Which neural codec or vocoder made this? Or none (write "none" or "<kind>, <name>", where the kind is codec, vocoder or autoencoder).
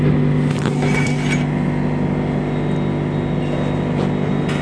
none